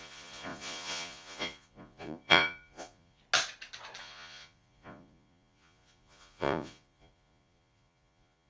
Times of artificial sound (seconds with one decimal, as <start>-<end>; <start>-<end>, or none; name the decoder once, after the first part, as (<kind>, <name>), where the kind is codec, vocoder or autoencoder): 0.0-3.2 (vocoder, Vocos); 4.0-8.5